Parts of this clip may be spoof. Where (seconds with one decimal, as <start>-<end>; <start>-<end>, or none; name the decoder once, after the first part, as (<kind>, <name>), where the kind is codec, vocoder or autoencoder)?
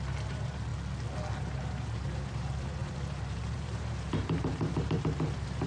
0.0-0.7 (vocoder, BigVGAN v2); 1.4-5.7